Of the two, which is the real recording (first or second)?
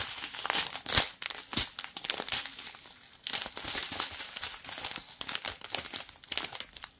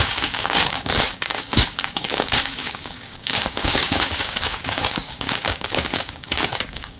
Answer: first